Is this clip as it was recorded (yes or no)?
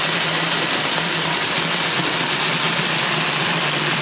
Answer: no